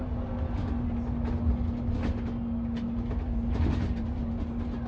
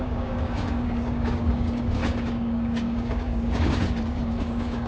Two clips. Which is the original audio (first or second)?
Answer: first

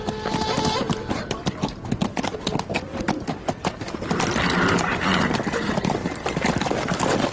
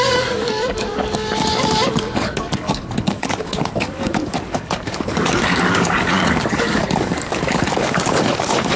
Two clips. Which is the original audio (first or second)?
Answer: first